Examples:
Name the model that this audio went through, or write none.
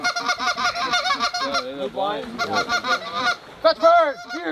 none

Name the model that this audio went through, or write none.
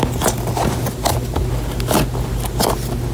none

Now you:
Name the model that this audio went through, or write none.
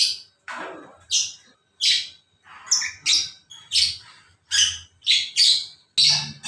none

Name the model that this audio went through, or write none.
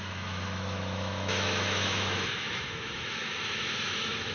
autoencoder, DAC-VAE